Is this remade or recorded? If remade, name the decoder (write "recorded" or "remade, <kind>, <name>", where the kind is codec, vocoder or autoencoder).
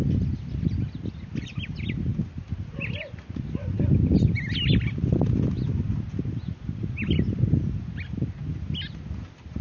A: recorded